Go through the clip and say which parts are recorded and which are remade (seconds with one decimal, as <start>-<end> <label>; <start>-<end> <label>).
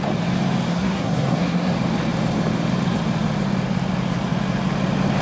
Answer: 0.0-0.7 recorded; 0.7-1.7 remade; 1.7-5.2 recorded